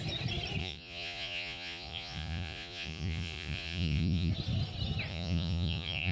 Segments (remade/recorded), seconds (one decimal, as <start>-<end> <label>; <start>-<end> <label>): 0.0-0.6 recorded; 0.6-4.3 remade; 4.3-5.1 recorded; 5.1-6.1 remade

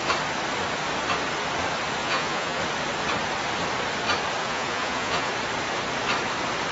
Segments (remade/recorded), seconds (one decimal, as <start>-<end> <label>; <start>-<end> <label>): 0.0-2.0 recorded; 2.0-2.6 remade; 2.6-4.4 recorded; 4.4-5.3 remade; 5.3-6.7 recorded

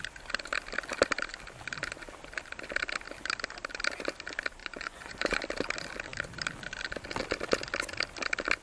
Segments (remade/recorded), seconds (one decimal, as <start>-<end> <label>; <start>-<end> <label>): 0.0-4.6 recorded; 4.6-5.4 remade; 5.4-8.6 recorded